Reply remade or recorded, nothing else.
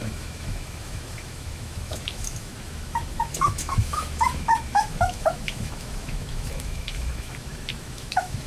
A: remade